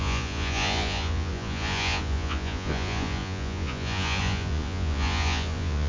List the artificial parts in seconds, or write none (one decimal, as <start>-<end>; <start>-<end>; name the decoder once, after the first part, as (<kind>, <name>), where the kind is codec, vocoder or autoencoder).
0.0-5.9 (vocoder, Vocos)